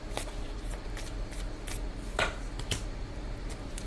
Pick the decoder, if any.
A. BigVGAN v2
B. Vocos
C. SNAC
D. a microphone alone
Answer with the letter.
D